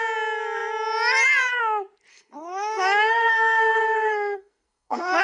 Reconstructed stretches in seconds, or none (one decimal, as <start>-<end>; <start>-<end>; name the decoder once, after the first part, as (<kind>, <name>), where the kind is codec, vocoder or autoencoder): 2.1-5.2 (codec, SNAC)